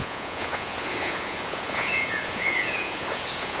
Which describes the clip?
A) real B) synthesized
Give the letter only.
B